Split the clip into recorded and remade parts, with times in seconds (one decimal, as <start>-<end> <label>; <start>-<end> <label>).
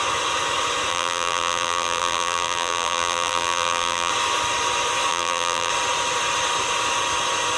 0.0-0.9 recorded; 0.9-4.1 remade; 4.1-5.1 recorded; 5.1-5.7 remade; 5.7-7.6 recorded